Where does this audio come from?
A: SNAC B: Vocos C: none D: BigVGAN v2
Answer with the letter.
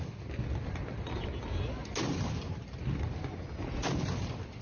C